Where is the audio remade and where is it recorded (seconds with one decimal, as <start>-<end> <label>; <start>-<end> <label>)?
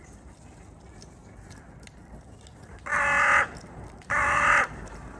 0.0-5.2 recorded